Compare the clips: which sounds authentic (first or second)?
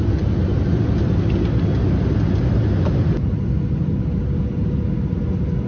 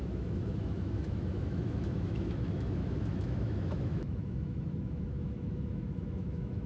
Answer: first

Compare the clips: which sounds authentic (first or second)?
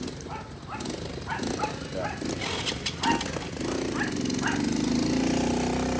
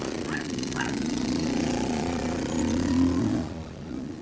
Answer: first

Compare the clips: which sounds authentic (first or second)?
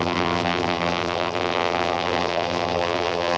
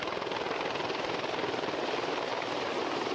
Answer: second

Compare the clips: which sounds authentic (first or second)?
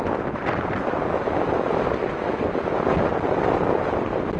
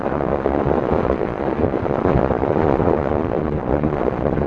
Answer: first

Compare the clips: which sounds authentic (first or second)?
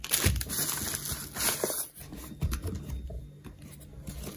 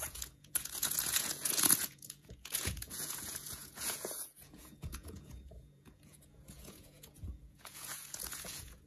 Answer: first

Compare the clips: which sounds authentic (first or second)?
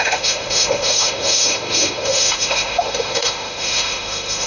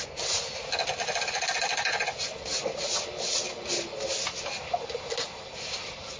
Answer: second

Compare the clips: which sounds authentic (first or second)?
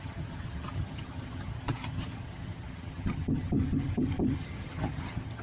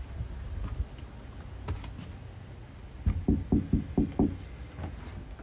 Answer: second